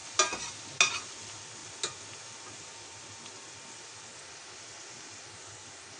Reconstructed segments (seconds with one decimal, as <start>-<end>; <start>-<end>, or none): none